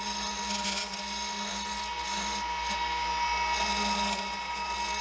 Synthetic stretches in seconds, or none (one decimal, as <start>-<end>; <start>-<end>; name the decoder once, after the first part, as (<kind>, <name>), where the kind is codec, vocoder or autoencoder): none